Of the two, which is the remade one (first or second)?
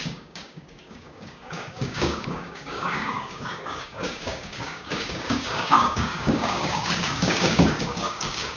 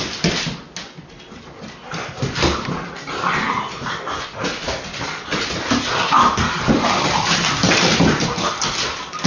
first